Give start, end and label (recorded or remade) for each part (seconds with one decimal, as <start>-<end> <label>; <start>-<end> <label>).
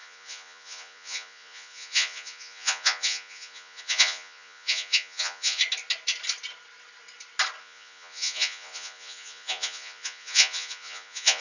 0.0-5.6 remade; 5.6-7.6 recorded; 7.6-11.4 remade